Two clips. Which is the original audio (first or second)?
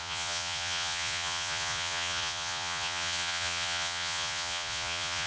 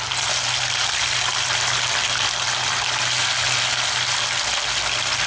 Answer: second